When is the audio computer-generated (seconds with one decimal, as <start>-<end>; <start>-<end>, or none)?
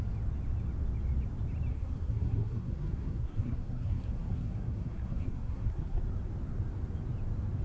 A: 1.7-6.0